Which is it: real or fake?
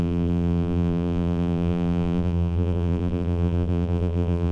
fake